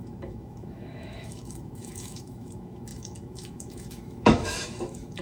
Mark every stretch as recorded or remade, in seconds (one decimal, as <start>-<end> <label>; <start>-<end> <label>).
0.0-5.2 remade